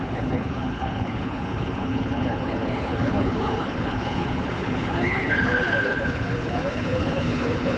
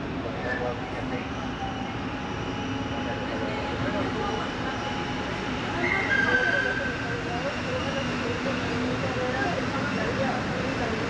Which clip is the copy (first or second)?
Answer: first